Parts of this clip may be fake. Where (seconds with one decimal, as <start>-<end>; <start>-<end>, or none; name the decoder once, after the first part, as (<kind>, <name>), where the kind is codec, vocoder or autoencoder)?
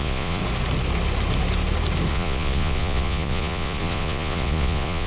0.0-0.4 (vocoder, Vocos); 2.1-5.1